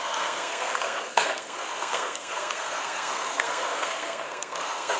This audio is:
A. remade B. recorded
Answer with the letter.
A